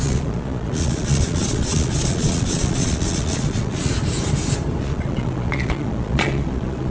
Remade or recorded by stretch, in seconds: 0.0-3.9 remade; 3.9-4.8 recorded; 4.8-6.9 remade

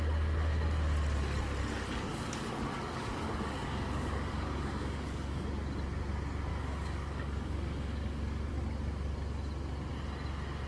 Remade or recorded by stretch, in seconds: 0.0-2.1 recorded; 2.1-5.4 remade; 5.4-6.5 recorded; 6.5-8.5 remade; 8.5-10.7 recorded

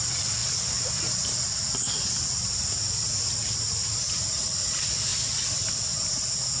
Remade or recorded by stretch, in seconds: 0.0-6.6 recorded

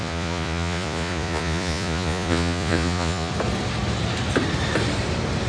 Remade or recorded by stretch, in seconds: 0.0-3.3 remade; 3.3-5.5 recorded

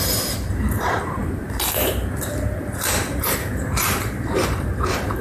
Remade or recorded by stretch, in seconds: 0.0-5.2 remade